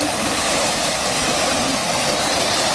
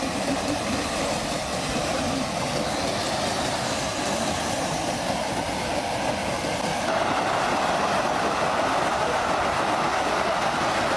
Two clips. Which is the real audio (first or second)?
second